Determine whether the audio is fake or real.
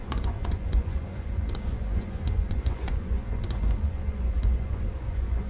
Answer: fake